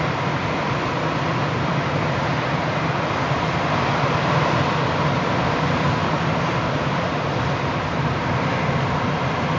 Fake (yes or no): no